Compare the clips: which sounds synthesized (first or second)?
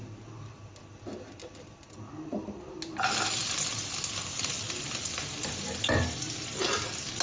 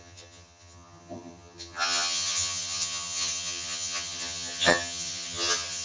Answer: second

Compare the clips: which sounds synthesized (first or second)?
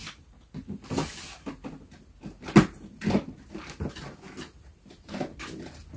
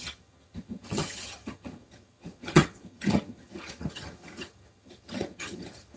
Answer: second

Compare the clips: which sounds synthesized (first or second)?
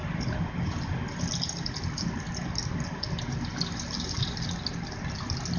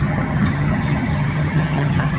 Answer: second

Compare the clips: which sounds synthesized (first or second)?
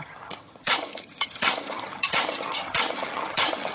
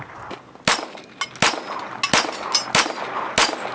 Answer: first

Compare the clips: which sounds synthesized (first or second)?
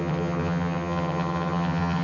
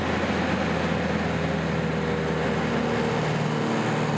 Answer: first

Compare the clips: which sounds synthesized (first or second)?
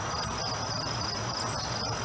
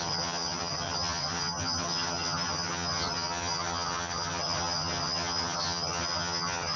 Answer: second